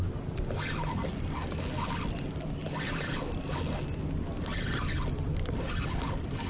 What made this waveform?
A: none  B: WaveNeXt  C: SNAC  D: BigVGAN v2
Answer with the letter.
A